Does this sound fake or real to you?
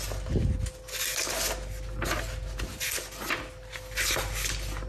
real